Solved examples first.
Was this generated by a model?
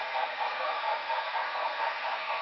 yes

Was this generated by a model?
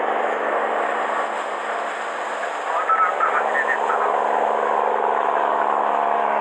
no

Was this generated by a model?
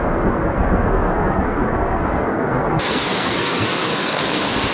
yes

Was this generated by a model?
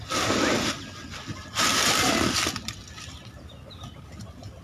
no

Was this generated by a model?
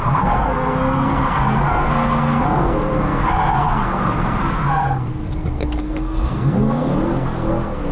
yes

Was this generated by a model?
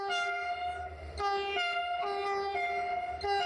no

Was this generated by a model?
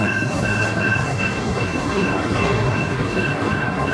yes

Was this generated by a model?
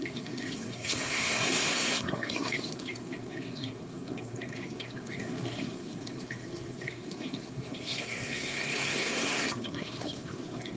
yes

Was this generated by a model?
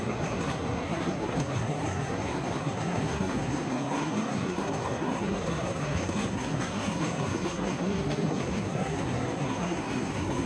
yes